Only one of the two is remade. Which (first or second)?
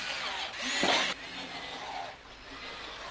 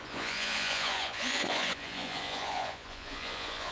second